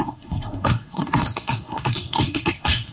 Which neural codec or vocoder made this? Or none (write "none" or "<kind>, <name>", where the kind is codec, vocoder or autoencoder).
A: codec, SNAC